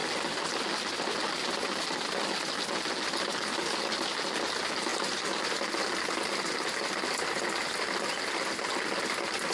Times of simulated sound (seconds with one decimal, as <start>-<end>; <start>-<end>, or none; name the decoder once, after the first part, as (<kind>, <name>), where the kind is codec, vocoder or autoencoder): none